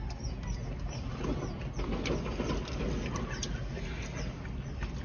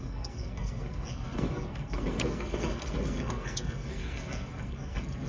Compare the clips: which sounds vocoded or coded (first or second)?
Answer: second